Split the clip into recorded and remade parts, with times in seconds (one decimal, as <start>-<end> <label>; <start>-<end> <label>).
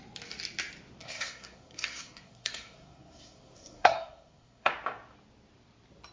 0.0-1.0 recorded; 1.0-4.7 remade; 4.7-6.1 recorded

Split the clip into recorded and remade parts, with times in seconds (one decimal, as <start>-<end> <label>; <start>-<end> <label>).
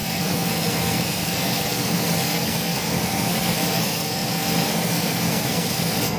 0.0-6.2 remade